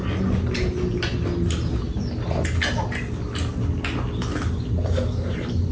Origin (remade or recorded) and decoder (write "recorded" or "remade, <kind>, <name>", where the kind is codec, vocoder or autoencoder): recorded